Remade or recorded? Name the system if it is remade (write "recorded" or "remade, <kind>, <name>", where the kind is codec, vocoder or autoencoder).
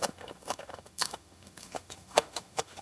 remade, autoencoder, DAC-VAE